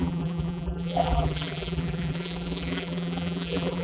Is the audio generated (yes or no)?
yes